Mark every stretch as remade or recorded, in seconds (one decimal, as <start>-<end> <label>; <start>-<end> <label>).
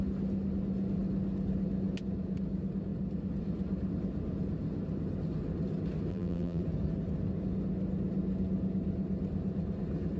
0.0-6.1 recorded; 6.1-6.6 remade; 6.6-10.2 recorded